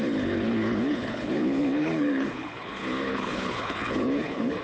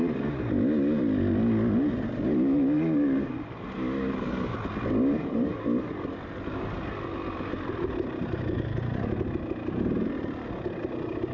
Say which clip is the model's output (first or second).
first